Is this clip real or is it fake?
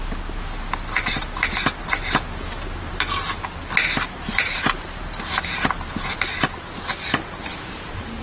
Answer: real